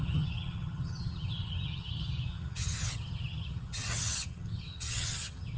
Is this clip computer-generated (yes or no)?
yes